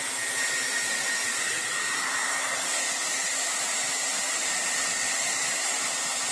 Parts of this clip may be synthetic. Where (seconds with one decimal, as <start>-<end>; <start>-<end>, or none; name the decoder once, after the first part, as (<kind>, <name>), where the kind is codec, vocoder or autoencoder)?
none